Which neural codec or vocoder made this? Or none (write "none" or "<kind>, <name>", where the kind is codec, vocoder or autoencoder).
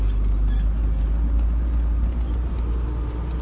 none